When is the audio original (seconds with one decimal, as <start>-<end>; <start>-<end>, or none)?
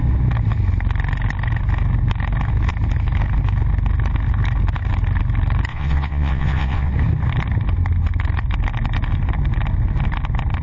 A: 0.0-5.7; 6.9-10.6